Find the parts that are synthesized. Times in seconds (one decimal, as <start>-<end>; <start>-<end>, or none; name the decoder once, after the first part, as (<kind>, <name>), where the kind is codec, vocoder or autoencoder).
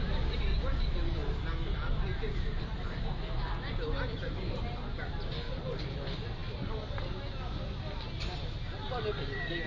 none